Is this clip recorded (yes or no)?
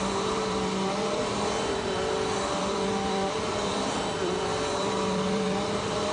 no